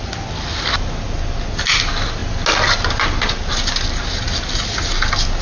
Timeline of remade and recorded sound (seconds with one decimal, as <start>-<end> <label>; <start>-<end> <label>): 0.0-5.4 recorded

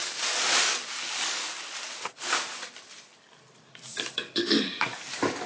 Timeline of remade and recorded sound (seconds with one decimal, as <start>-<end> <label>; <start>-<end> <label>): 0.0-1.4 remade; 1.4-3.7 recorded; 3.7-5.5 remade

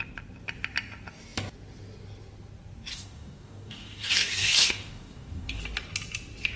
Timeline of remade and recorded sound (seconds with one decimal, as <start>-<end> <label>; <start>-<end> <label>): 0.0-2.9 recorded; 2.9-5.6 remade; 5.6-6.6 recorded

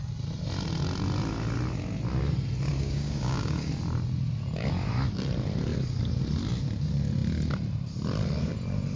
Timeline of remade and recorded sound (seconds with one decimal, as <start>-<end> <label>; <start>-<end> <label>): 0.0-2.7 recorded; 2.7-3.7 remade; 3.7-9.0 recorded

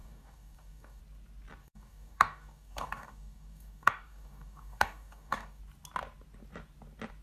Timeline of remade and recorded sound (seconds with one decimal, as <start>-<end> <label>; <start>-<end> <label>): 0.0-1.0 remade; 1.0-1.6 recorded; 1.6-5.6 remade; 5.6-7.2 recorded

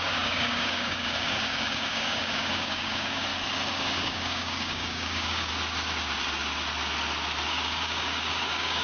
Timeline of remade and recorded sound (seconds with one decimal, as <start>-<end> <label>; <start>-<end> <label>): 0.0-3.3 remade; 3.3-3.8 recorded; 3.8-5.5 remade; 5.5-7.5 recorded; 7.5-8.8 remade